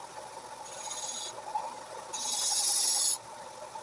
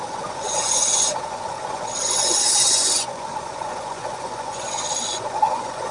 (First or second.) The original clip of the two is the first